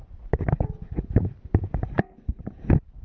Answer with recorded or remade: recorded